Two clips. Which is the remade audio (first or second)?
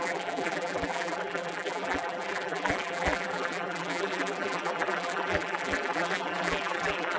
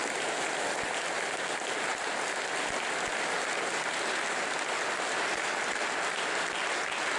first